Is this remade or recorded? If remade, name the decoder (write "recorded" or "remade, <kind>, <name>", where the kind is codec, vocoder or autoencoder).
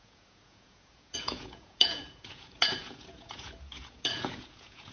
remade, vocoder, Vocos